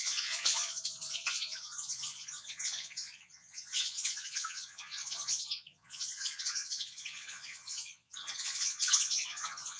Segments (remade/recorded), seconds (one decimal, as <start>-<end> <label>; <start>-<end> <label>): 0.0-9.8 remade